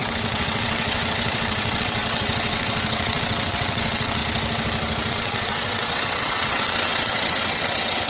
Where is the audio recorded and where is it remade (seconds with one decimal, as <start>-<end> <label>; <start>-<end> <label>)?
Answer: 0.0-4.2 remade; 4.2-5.1 recorded; 5.1-8.1 remade

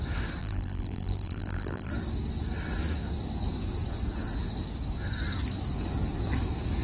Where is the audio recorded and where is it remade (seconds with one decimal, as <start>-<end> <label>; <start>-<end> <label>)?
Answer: 0.0-0.4 recorded; 0.4-1.9 remade; 1.9-6.8 recorded

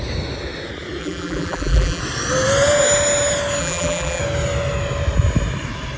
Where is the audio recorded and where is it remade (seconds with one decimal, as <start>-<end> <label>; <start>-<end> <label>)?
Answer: 0.0-1.0 recorded; 1.0-2.0 remade; 2.0-3.6 recorded; 3.6-4.2 remade; 4.2-6.0 recorded

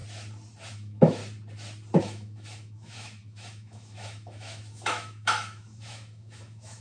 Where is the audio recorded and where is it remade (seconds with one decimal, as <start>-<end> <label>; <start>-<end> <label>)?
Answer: 0.0-0.7 recorded; 0.7-1.2 remade; 1.2-2.0 recorded; 2.0-6.8 remade

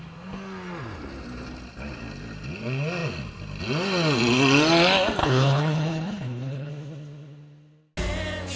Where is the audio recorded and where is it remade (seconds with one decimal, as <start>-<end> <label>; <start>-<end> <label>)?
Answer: 0.0-5.2 recorded; 5.2-6.7 remade; 6.7-8.6 recorded

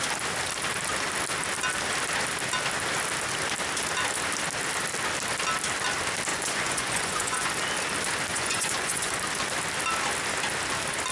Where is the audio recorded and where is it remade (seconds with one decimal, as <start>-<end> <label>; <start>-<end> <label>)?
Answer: 0.0-6.3 recorded; 6.3-7.5 remade; 7.5-8.3 recorded; 8.3-9.1 remade; 9.1-11.1 recorded

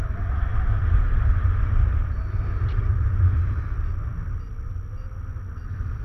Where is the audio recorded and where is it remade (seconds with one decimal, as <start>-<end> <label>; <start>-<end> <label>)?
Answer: 0.0-6.0 recorded

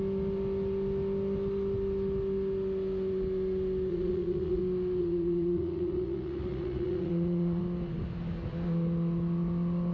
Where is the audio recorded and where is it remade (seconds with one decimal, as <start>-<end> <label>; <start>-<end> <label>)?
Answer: 0.0-3.9 recorded; 3.9-4.6 remade; 4.6-5.0 recorded; 5.0-7.6 remade; 7.6-9.9 recorded